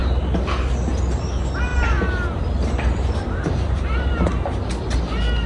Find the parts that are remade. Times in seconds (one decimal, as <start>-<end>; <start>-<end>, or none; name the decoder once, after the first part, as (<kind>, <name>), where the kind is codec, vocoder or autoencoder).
1.7-5.0 (vocoder, BigVGAN v2)